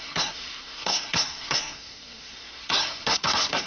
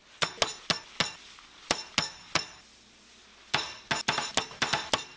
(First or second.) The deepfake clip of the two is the first